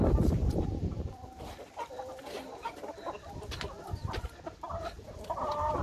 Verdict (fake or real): fake